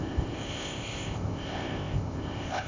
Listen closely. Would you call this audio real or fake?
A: fake